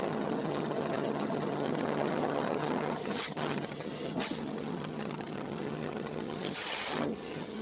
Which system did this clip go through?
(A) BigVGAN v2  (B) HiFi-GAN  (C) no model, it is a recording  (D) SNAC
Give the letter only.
B